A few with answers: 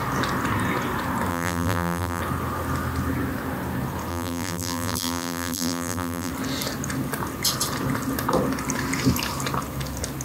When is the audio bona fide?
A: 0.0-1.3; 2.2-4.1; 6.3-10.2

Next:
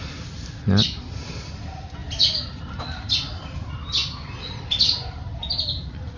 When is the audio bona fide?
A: 0.0-6.2

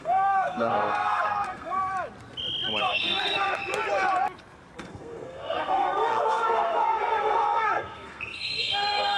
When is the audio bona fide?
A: 1.8-2.8; 3.6-4.8